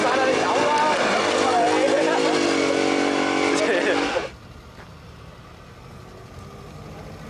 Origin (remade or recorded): recorded